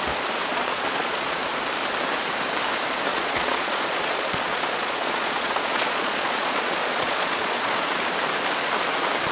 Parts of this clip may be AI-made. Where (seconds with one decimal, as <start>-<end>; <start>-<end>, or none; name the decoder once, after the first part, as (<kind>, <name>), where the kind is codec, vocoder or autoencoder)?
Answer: 0.5-1.4 (vocoder, Vocos); 3.1-8.0